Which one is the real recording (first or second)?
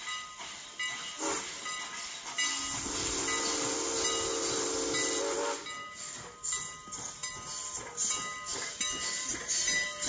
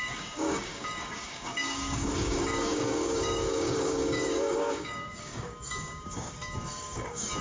first